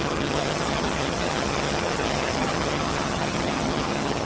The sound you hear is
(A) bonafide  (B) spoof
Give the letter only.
B